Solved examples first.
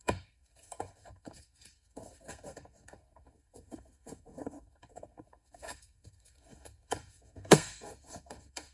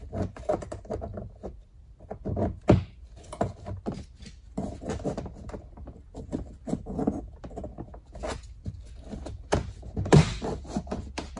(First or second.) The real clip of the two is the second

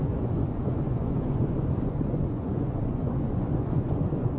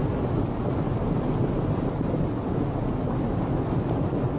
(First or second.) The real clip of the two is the second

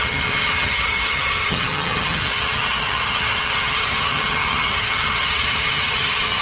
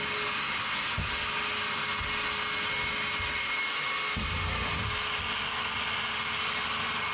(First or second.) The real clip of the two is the second